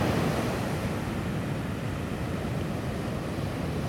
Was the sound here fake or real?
real